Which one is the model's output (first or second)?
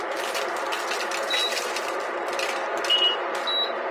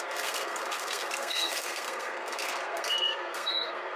second